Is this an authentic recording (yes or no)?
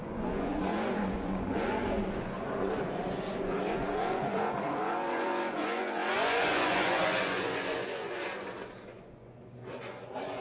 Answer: no